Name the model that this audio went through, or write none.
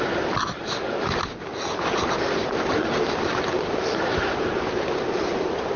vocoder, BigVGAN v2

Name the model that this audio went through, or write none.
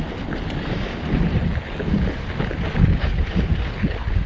none